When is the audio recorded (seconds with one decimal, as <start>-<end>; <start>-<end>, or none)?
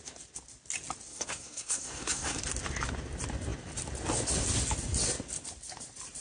0.0-1.1; 2.4-6.2